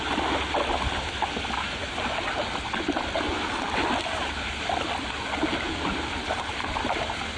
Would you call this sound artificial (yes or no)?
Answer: no